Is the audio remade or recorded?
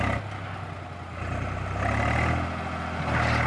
recorded